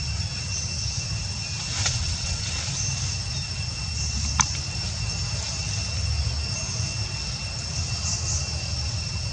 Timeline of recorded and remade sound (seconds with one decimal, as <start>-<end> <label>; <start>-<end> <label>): 0.0-1.8 recorded; 1.8-2.5 remade; 2.5-9.3 recorded